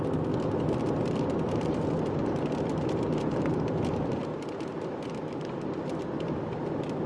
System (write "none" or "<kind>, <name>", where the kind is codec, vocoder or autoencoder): none